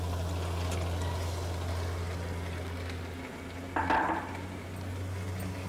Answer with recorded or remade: recorded